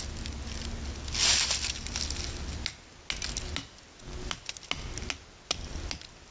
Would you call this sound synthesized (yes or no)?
no